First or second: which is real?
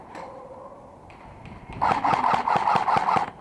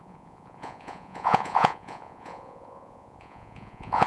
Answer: first